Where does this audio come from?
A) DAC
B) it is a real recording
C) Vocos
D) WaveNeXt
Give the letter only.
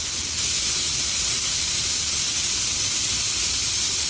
B